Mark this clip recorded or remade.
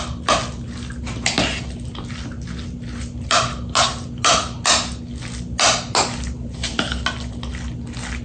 recorded